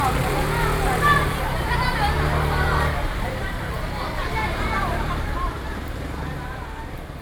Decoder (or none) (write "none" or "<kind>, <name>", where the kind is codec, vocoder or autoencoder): vocoder, BigVGAN v2